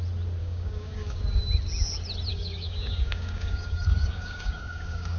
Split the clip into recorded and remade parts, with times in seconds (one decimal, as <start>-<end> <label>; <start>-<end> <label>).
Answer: 0.0-0.4 recorded; 0.4-1.2 remade; 1.2-2.3 recorded; 2.3-5.2 remade